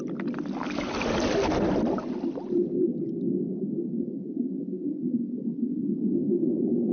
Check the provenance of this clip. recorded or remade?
recorded